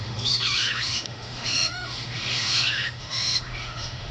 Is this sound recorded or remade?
remade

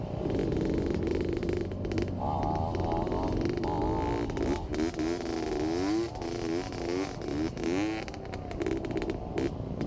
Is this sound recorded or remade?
recorded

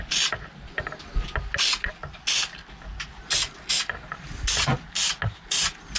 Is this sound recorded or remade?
recorded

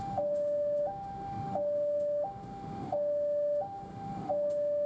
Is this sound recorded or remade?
remade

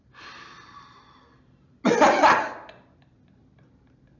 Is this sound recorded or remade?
recorded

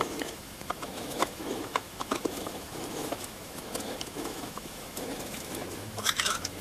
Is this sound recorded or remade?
remade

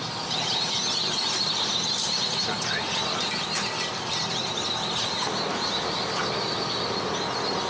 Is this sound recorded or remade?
recorded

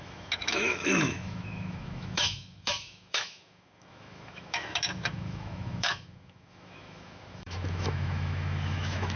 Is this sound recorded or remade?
remade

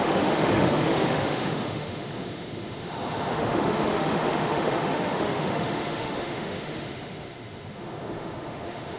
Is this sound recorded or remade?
remade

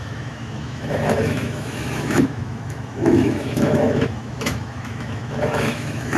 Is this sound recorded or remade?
remade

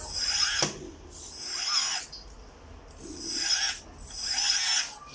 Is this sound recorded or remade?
recorded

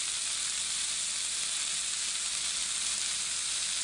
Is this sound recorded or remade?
recorded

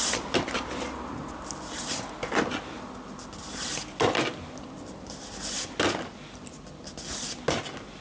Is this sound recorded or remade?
recorded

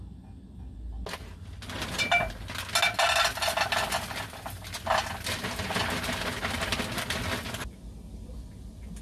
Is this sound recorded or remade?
recorded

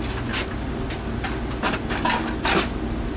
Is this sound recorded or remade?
recorded